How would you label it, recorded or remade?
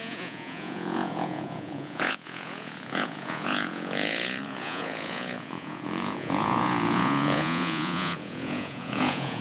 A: remade